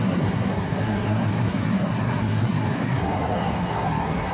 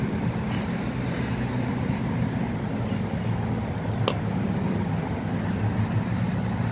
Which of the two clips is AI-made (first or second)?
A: first